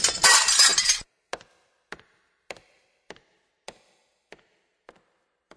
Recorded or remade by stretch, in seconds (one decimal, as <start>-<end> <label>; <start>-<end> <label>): 0.0-5.6 recorded